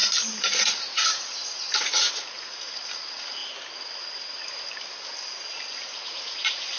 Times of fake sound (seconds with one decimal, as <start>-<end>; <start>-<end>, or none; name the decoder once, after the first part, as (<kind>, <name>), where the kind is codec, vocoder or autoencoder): 0.6-3.4 (vocoder, Vocos); 5.5-6.8